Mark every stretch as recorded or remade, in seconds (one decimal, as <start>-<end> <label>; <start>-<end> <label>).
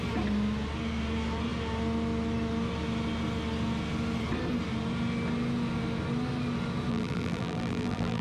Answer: 0.0-6.9 recorded; 6.9-8.2 remade